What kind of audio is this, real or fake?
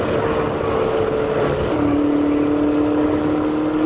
real